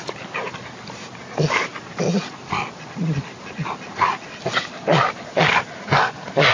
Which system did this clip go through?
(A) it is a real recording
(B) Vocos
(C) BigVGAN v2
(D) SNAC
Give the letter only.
A